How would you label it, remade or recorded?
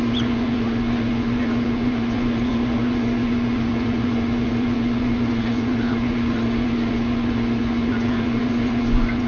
remade